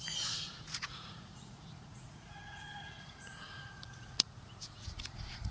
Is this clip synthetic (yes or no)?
yes